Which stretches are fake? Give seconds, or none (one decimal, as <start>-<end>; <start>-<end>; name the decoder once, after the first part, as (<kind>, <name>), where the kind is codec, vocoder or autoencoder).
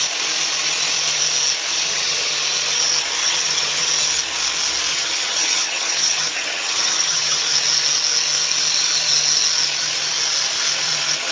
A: 1.7-2.3 (vocoder, HiFi-GAN); 3.2-3.9; 4.9-7.4